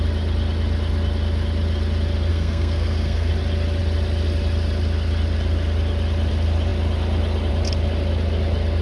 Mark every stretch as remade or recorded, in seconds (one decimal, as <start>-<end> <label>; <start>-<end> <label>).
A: 0.0-2.3 recorded; 2.3-3.3 remade; 3.3-8.8 recorded